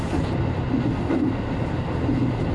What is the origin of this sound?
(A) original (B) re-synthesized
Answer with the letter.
A